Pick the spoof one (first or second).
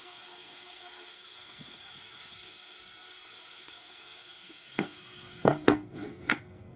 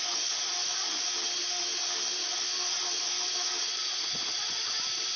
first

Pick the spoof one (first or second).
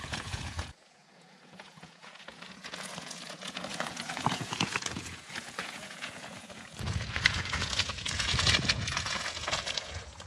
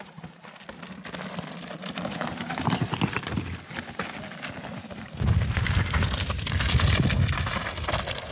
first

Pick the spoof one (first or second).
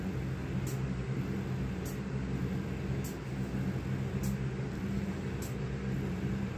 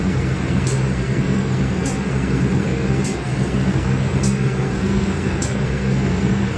second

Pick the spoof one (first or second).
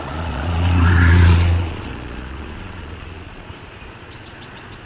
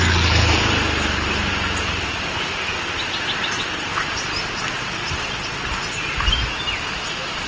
first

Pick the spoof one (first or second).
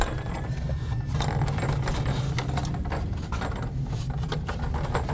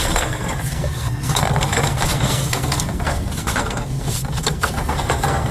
second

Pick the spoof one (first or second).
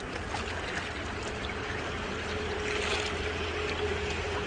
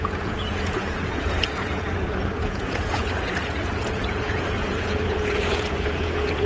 second